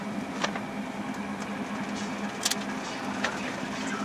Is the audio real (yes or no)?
yes